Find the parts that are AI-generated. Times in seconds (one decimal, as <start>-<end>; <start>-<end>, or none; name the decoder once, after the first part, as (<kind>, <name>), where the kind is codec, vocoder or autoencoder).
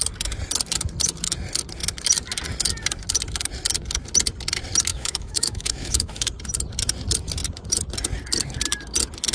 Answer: 4.9-6.3 (autoencoder, DAC-VAE)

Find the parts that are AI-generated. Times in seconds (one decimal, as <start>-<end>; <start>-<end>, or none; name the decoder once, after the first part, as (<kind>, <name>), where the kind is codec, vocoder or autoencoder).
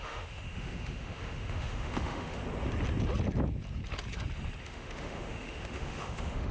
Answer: 0.0-2.4 (autoencoder, DAC-VAE); 4.6-6.5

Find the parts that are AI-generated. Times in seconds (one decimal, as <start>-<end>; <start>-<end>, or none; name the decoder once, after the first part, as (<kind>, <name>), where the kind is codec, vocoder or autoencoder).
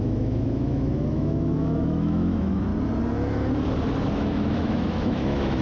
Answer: 0.0-2.7 (autoencoder, DAC-VAE); 4.1-5.6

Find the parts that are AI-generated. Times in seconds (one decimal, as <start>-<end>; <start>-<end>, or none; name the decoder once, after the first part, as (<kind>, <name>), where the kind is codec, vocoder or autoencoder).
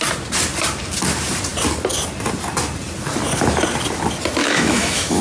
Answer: 4.4-5.2 (autoencoder, DAC-VAE)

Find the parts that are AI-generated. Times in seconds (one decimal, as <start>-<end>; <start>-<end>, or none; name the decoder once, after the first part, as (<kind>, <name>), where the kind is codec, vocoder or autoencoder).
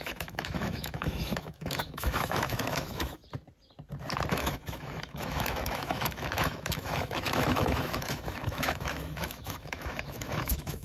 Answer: 0.0-3.2 (autoencoder, DAC-VAE); 4.3-10.8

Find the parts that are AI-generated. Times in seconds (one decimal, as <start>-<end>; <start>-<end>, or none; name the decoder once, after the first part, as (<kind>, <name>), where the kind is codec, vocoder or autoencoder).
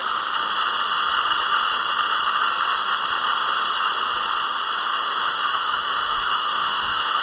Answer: 4.9-7.2 (autoencoder, DAC-VAE)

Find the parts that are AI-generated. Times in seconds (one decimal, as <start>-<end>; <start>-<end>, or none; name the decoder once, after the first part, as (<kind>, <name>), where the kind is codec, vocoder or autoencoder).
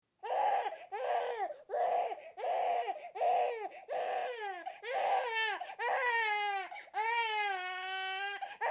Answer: none